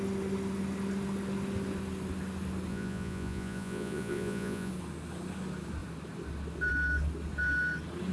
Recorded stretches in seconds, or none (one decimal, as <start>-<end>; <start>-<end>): 0.0-2.7; 4.7-8.1